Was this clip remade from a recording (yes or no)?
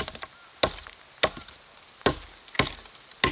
no